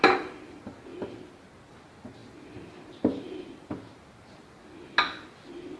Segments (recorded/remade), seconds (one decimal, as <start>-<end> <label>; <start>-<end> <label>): 0.0-5.8 recorded